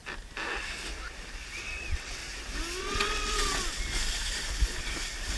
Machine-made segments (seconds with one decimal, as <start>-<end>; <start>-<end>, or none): 1.6-2.2; 2.8-3.6